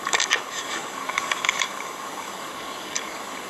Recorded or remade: remade